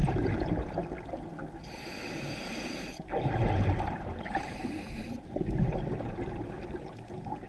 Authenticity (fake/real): real